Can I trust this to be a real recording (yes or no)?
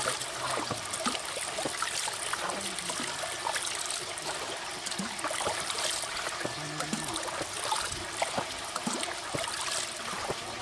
yes